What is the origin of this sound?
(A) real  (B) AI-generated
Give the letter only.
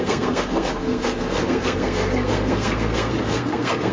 B